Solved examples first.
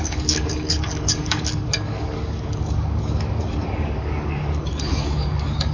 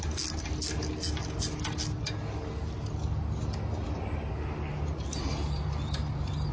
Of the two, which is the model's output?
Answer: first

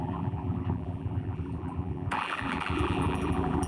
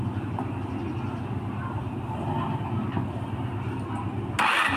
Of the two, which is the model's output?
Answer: first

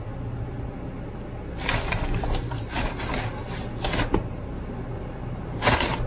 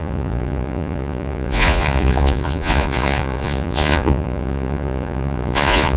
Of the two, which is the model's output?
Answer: second